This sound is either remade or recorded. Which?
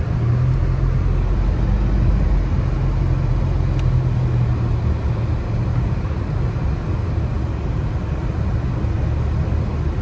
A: recorded